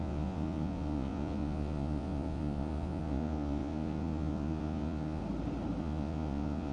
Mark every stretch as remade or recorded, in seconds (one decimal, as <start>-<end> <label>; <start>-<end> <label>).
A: 0.0-5.2 remade; 5.2-5.8 recorded; 5.8-6.7 remade